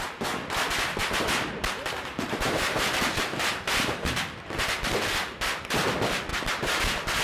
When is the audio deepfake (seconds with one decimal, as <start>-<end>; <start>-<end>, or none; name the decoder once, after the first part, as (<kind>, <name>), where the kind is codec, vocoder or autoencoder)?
1.0-4.2 (vocoder, BigVGAN v2); 6.3-6.8